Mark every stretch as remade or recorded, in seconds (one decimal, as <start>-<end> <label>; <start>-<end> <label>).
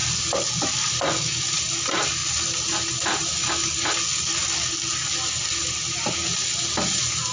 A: 0.0-7.3 recorded